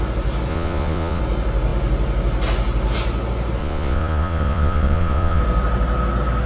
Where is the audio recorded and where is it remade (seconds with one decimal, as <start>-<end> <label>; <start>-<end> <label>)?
0.0-0.5 recorded; 0.5-1.2 remade; 1.2-3.6 recorded; 3.6-5.4 remade; 5.4-6.5 recorded